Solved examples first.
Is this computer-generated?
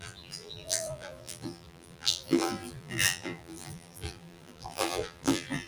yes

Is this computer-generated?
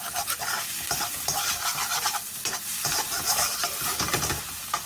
yes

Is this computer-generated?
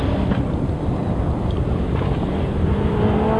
no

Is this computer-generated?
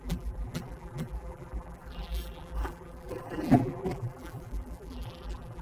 yes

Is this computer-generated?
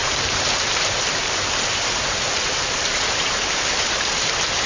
yes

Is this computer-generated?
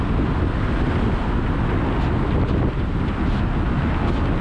no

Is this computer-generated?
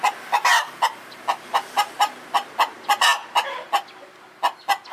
no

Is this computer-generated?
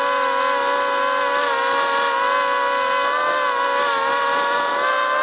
no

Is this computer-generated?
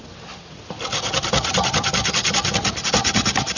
yes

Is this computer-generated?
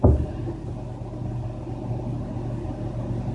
no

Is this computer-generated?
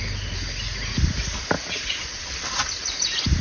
no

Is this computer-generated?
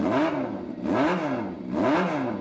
no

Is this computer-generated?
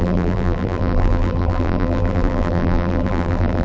yes